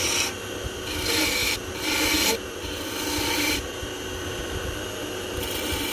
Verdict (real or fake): fake